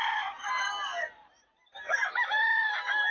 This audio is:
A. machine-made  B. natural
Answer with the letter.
B